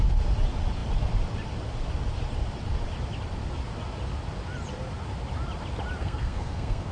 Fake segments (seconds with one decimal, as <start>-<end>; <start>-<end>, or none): 6.0-6.9